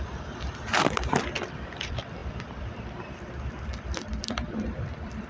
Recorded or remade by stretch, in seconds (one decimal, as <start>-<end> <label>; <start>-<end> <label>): 0.0-5.3 remade